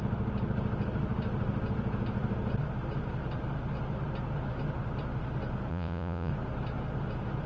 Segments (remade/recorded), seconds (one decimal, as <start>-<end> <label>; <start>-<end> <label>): 0.0-5.7 recorded; 5.7-6.3 remade; 6.3-7.5 recorded